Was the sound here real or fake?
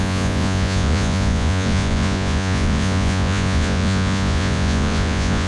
fake